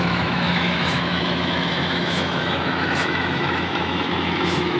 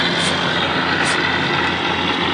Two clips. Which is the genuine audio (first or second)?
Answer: second